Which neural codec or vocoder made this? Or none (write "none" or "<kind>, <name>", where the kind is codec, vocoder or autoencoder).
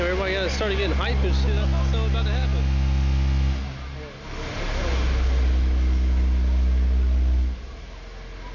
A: none